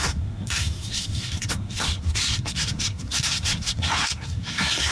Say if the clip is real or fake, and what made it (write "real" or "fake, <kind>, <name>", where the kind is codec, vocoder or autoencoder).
fake, codec, SNAC